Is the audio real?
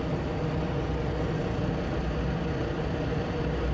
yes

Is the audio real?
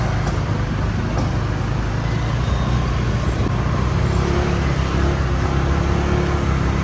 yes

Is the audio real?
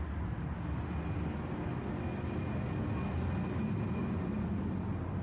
yes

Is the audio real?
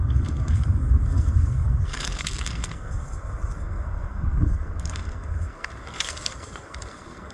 no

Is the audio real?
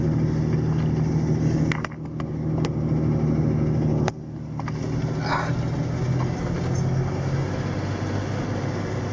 yes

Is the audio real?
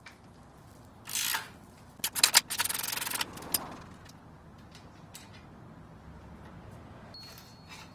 yes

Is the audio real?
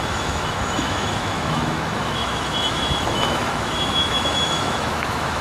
no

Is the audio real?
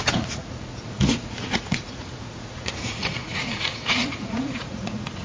no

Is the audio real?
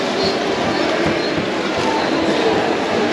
yes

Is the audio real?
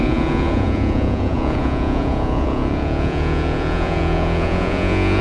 no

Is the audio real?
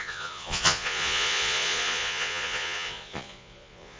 no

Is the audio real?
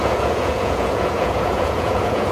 no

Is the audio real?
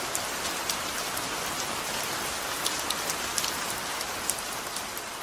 yes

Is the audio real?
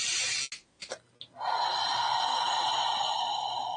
yes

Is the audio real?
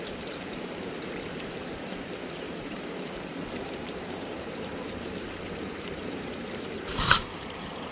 no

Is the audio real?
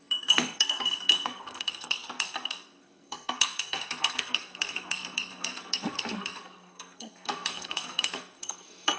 no